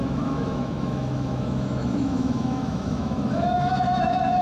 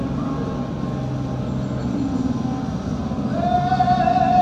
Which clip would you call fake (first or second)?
first